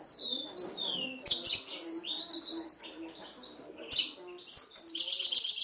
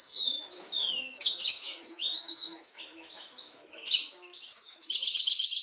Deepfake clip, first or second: second